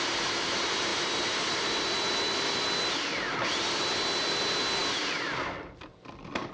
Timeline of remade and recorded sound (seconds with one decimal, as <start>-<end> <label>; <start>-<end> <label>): 0.0-6.5 recorded